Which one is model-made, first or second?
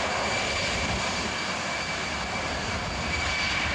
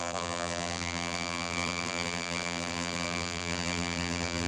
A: second